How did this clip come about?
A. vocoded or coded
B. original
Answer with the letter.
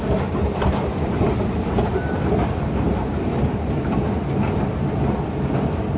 A